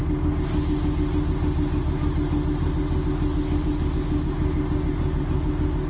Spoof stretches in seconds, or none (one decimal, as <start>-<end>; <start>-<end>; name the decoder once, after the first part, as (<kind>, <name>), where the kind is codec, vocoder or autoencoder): none